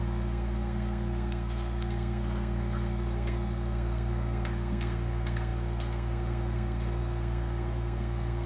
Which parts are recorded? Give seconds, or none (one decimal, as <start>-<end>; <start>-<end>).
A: none